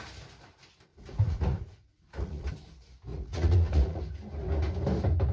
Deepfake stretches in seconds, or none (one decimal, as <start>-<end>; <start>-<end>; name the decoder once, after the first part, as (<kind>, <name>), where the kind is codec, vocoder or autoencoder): 0.9-2.5 (vocoder, Vocos); 3.1-4.0